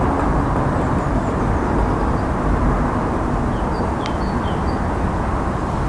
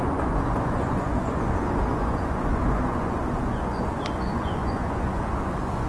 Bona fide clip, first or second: first